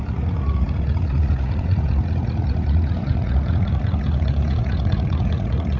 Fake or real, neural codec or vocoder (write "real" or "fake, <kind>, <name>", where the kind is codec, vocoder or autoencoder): fake, vocoder, Vocos